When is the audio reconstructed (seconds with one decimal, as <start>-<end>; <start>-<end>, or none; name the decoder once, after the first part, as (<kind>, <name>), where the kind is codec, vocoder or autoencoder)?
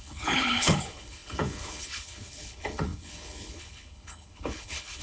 0.0-5.0 (codec, HILCodec)